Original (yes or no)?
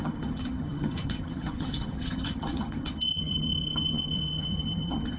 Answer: no